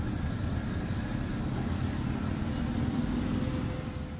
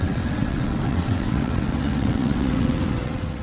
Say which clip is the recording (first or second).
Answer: first